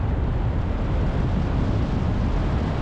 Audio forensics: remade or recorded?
recorded